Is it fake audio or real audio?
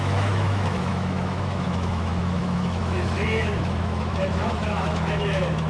fake